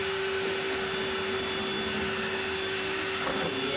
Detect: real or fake real